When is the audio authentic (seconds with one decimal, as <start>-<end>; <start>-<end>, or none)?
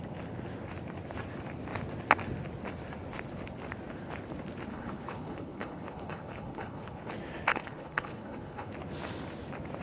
0.0-4.7; 7.1-7.5; 8.7-9.8